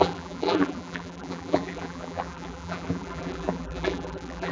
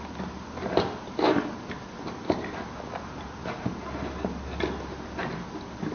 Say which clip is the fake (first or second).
first